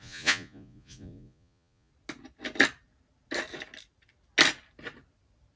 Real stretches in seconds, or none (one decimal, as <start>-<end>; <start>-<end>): 1.9-5.6

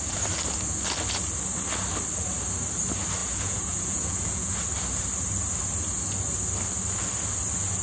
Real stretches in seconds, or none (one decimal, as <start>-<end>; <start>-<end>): 0.0-3.2; 4.6-7.8

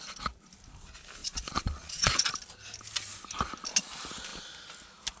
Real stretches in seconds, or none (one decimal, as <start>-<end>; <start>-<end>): 0.0-1.2; 2.2-5.2

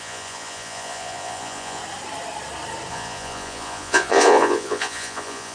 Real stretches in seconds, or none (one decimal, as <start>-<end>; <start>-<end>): 1.8-2.9